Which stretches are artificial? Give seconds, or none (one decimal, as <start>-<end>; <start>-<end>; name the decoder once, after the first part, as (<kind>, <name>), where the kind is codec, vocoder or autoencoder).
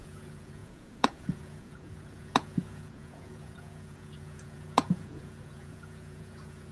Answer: 0.0-6.7 (vocoder, Vocos)